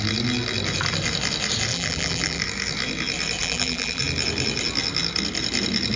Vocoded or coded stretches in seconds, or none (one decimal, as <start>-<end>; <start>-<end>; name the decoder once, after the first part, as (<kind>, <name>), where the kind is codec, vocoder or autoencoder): 1.7-2.4 (vocoder, BigVGAN v2); 3.4-4.0